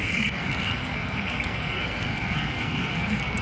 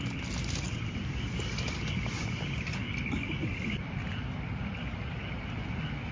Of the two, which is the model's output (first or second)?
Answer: first